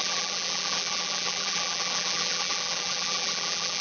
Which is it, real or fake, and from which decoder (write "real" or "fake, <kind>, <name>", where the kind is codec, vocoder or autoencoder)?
fake, vocoder, BigVGAN v2